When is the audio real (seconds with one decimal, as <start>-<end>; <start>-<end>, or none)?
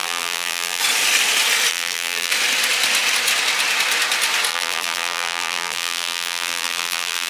0.8-1.7; 2.3-4.5